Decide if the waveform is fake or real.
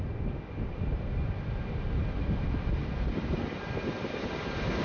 real